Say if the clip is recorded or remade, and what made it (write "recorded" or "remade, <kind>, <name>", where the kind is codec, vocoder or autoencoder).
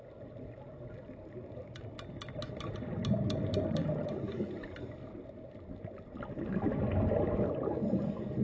recorded